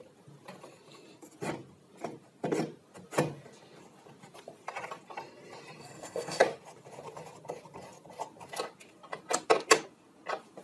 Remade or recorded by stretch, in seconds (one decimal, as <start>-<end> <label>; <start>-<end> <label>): 0.0-5.8 recorded; 5.8-6.4 remade; 6.4-10.6 recorded